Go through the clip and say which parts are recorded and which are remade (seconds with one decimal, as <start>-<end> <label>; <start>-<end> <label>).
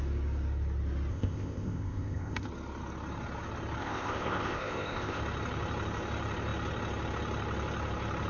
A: 0.0-1.1 recorded; 1.1-2.5 remade; 2.5-3.8 recorded; 3.8-5.2 remade; 5.2-8.3 recorded